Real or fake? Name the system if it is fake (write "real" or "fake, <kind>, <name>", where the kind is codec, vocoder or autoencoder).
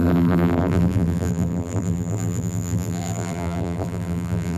fake, vocoder, BigVGAN v2